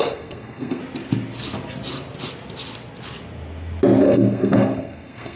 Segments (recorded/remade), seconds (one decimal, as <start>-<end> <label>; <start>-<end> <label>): 0.0-0.8 remade; 0.8-4.0 recorded; 4.0-5.4 remade